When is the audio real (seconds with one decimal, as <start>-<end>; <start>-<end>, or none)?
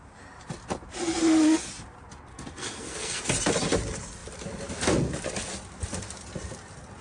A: 0.0-2.3; 3.2-7.0